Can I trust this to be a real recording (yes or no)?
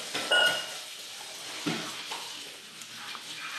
yes